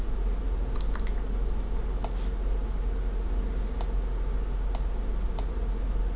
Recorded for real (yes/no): yes